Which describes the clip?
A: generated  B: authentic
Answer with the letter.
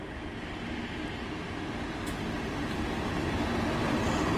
B